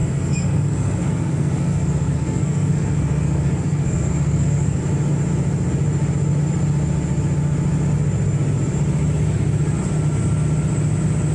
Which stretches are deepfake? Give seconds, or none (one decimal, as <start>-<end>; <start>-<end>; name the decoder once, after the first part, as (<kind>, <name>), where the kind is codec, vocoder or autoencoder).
0.0-4.8 (codec, SNAC)